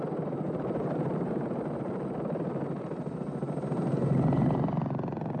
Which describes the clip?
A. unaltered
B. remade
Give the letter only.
A